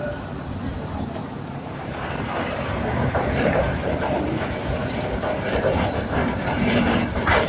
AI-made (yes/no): yes